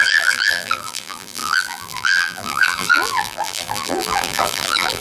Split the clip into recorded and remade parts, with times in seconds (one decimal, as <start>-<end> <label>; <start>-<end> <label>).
0.0-5.0 remade